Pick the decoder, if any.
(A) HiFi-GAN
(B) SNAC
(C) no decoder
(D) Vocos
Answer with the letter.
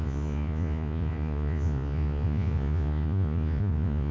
D